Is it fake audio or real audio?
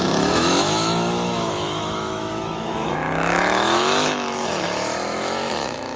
fake